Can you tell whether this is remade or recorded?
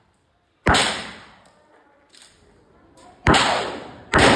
remade